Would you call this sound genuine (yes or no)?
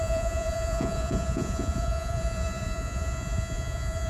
no